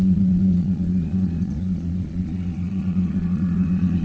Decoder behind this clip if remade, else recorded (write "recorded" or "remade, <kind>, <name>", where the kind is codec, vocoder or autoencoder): remade, vocoder, Vocos